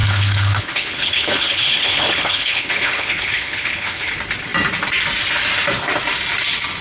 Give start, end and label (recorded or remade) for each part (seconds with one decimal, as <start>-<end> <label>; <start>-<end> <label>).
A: 0.0-4.1 remade; 4.1-6.8 recorded